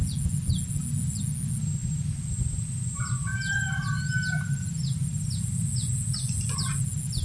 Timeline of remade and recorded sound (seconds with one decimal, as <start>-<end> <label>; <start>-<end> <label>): 0.0-7.2 recorded